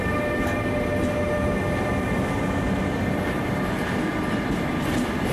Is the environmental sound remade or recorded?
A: recorded